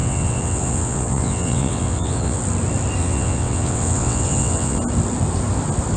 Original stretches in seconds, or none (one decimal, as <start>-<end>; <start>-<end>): 2.4-3.0; 4.8-6.0